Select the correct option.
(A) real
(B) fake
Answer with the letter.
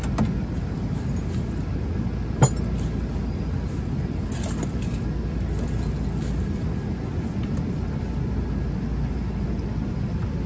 A